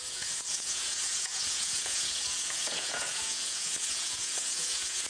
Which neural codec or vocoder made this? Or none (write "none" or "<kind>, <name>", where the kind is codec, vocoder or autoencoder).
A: vocoder, Vocos